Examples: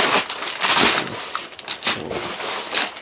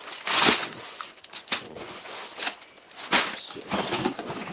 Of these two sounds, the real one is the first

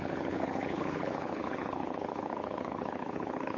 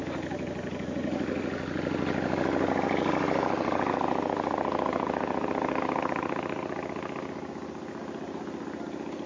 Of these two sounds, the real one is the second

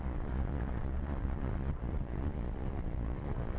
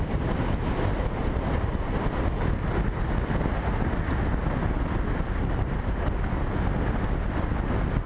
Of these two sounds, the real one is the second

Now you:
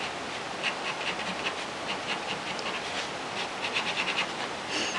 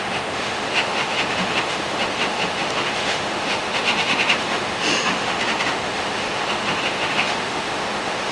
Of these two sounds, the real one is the first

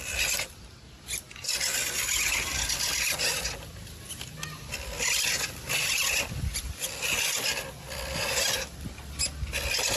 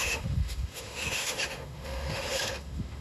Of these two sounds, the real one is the first